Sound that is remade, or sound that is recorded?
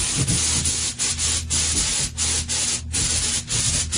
recorded